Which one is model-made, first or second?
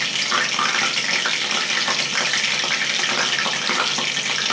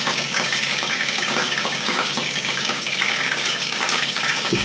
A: second